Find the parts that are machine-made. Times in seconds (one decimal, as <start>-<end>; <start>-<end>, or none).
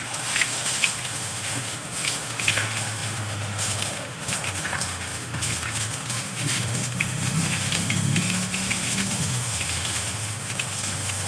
0.0-11.3